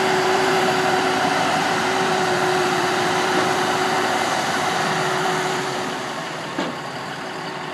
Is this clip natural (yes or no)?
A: no